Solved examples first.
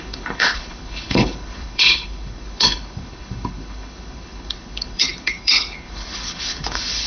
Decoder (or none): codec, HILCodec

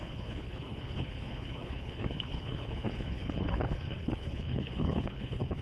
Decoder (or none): codec, HILCodec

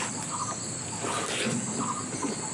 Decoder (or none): none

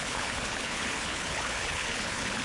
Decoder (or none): codec, HILCodec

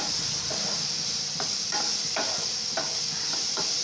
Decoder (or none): none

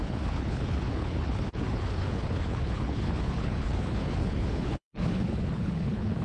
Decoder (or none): codec, HILCodec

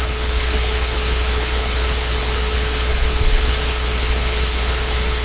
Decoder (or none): codec, HILCodec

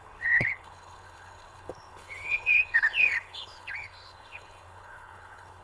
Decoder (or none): codec, HILCodec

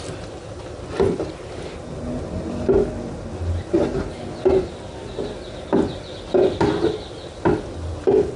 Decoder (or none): none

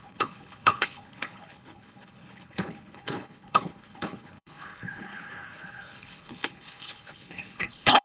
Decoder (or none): codec, HILCodec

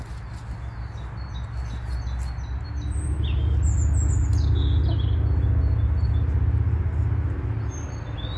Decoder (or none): none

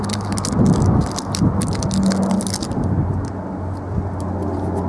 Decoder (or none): none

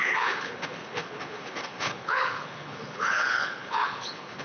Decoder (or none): codec, HILCodec